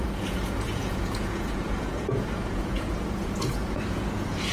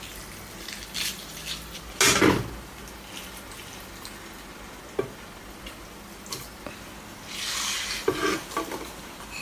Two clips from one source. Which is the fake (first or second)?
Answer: first